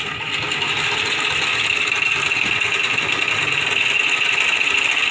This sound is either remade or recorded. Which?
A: recorded